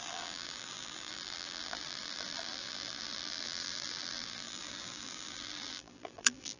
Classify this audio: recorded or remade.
remade